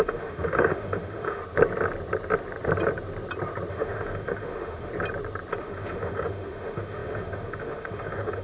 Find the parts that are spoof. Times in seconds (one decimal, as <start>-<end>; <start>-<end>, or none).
0.0-1.4; 3.7-4.9; 5.6-8.4